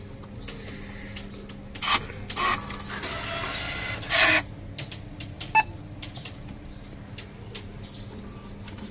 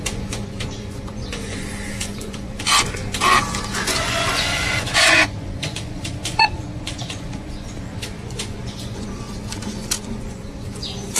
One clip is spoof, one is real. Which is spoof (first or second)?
second